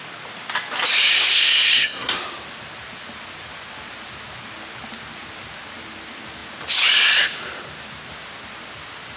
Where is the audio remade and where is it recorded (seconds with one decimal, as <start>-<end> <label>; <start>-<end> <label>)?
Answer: 0.0-1.1 recorded; 1.1-2.2 remade; 2.2-9.2 recorded